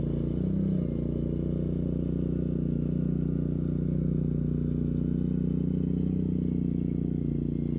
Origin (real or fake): real